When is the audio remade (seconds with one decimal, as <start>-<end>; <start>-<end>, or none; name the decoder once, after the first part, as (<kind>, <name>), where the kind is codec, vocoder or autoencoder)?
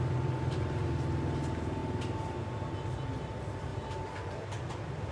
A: none